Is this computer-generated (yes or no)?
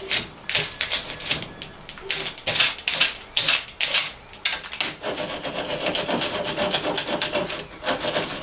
no